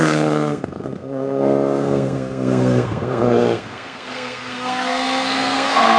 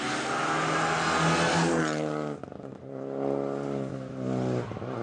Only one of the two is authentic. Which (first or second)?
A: second